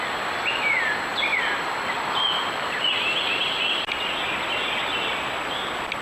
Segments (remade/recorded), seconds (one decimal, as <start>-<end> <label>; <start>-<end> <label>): 0.0-6.0 recorded